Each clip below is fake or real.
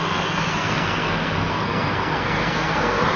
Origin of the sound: fake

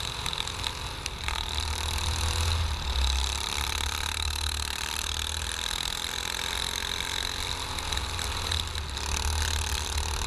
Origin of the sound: real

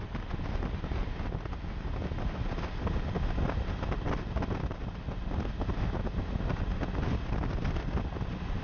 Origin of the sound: real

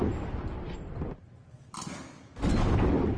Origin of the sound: real